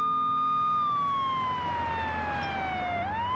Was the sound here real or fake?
real